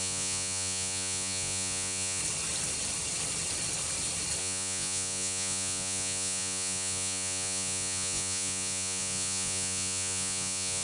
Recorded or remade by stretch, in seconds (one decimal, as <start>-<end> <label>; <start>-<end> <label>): 0.0-2.2 remade; 2.2-4.4 recorded; 4.4-10.8 remade